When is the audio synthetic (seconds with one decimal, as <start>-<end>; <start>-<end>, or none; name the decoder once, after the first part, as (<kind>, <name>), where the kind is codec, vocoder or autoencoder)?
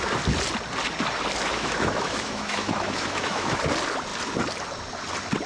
1.5-3.6 (autoencoder, DAC-VAE)